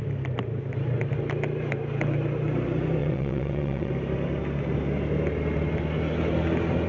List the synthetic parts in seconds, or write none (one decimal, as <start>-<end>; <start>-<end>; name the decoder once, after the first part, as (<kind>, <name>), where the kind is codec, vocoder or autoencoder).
3.0-3.9 (vocoder, WaveNeXt)